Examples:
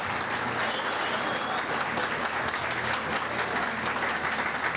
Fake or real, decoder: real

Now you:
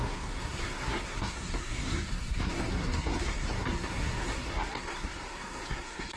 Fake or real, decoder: fake, codec, SNAC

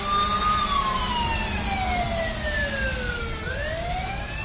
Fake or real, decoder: real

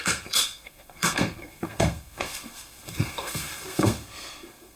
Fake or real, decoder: fake, codec, SNAC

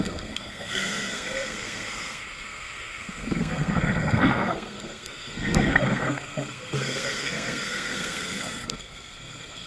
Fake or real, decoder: fake, codec, SNAC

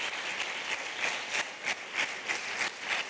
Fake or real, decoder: real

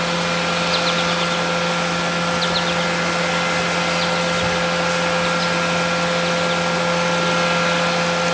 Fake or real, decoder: real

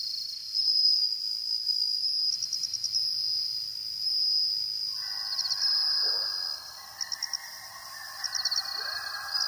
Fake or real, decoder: real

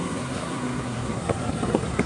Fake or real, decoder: fake, codec, SNAC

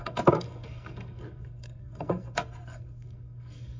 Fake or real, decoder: fake, codec, SNAC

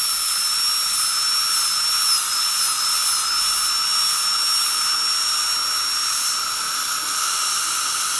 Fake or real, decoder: real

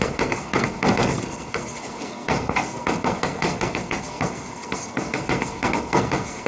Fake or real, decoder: fake, codec, SNAC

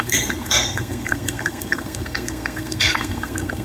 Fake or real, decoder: fake, codec, SNAC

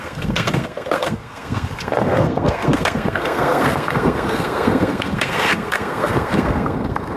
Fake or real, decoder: fake, codec, SNAC